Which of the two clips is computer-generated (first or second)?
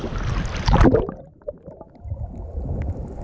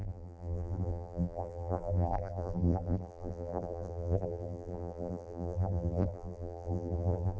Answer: second